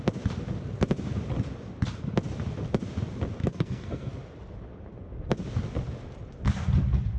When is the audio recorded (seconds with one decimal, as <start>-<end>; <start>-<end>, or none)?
0.0-3.4; 4.1-7.2